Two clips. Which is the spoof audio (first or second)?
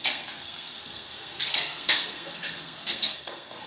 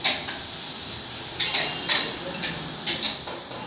first